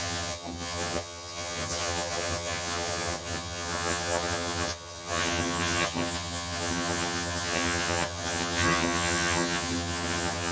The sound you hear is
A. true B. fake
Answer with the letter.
B